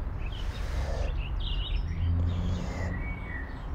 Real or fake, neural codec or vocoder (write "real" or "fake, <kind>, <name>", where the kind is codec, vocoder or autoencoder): real